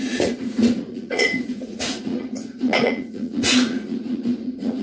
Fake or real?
fake